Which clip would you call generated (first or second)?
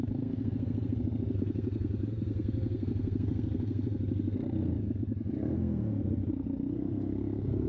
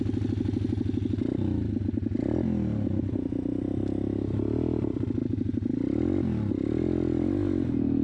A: first